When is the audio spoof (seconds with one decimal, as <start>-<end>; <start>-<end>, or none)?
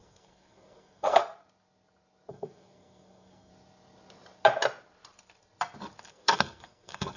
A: 0.0-1.2; 2.3-3.5; 6.1-7.2